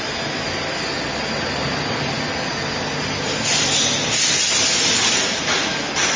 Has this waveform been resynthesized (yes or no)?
no